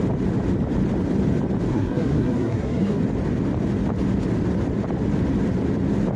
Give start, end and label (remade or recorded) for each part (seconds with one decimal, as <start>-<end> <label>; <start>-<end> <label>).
0.0-1.7 recorded; 1.7-3.0 remade; 3.0-6.2 recorded